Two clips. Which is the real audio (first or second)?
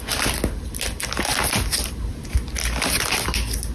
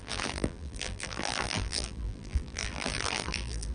first